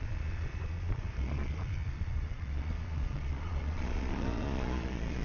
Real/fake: fake